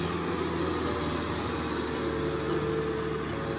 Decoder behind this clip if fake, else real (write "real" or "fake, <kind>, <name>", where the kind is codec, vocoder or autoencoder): real